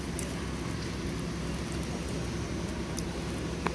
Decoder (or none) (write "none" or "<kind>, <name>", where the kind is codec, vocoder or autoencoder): none